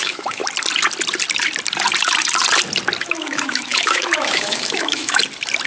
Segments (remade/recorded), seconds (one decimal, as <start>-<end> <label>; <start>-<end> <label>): 0.0-0.4 remade; 0.4-3.0 recorded; 3.0-5.2 remade; 5.2-5.7 recorded